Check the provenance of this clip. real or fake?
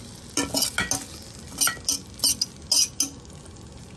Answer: real